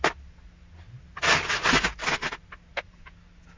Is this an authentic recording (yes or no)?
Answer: yes